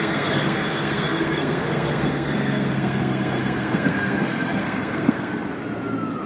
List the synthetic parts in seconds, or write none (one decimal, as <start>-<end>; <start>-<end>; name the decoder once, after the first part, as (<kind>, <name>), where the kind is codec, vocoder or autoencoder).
0.0-5.3 (codec, SNAC)